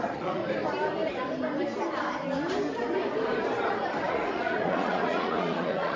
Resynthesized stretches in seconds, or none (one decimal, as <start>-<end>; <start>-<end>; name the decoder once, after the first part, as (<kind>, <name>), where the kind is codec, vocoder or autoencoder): 0.0-0.4 (vocoder, Vocos); 4.0-6.0